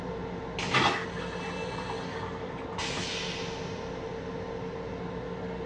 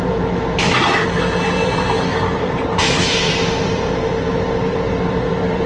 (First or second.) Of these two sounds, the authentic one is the first